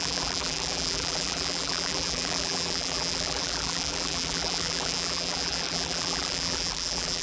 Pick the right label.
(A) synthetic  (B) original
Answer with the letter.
A